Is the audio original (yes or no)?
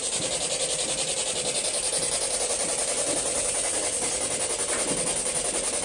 yes